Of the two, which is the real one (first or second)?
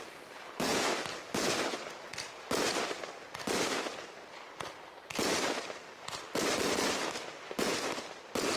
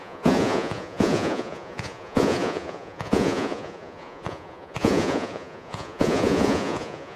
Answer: first